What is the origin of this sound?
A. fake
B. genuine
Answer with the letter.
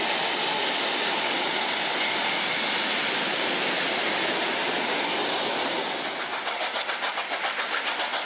B